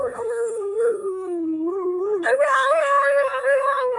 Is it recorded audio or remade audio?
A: remade